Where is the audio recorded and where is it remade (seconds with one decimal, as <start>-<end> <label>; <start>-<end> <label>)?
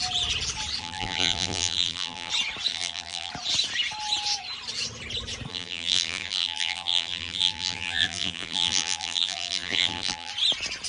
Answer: 0.0-0.8 recorded; 0.8-2.3 remade; 2.3-2.7 recorded; 2.7-3.3 remade; 3.3-5.5 recorded; 5.5-10.3 remade; 10.3-10.9 recorded